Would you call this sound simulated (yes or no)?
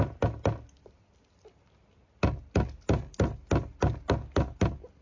no